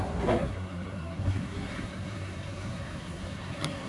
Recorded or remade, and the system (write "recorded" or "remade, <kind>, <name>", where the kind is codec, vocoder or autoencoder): remade, codec, SNAC